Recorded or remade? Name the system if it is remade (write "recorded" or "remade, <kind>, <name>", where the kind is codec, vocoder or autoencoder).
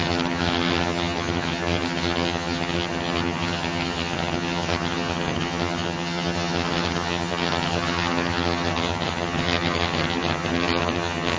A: remade, vocoder, HiFi-GAN